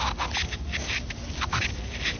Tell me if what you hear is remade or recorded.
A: recorded